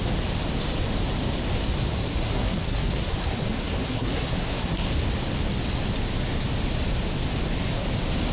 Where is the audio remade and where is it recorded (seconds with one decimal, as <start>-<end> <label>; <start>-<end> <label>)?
0.0-1.9 recorded; 1.9-5.0 remade; 5.0-8.3 recorded